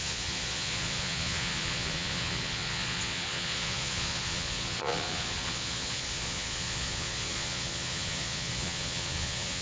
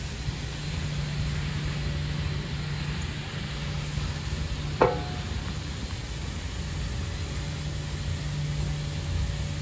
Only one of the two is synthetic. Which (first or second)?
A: first